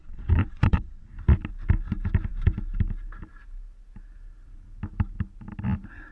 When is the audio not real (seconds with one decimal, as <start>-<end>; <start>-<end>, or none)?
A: 0.0-1.1

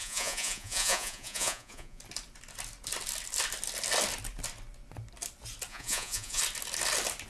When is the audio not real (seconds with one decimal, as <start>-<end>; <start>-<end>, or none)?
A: 0.0-2.0; 5.7-6.4

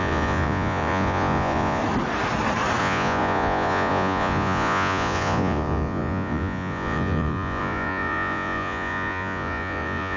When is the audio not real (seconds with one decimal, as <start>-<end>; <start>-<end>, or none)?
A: 0.0-1.8; 2.8-10.2

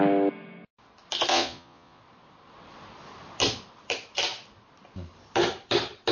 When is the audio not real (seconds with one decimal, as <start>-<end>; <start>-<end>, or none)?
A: 1.3-2.0

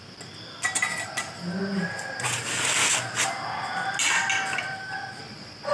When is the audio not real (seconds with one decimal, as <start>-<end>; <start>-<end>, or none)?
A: 5.2-5.7

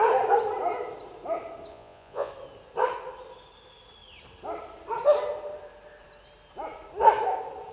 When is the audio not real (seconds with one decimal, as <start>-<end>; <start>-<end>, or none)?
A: 1.7-2.3